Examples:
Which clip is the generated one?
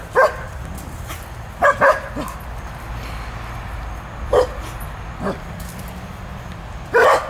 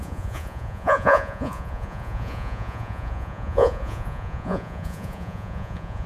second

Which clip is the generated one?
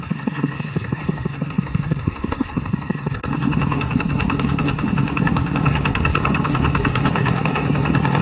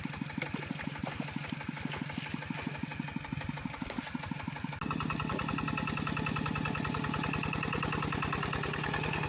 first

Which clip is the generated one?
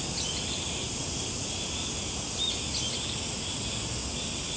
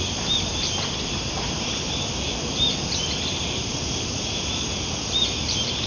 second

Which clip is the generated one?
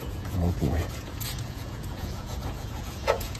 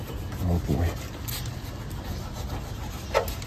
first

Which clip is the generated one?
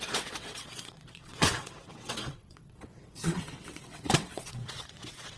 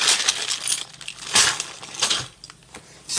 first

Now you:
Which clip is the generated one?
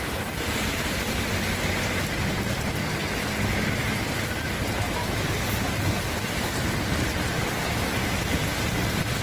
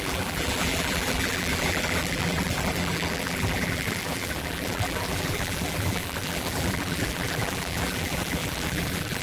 second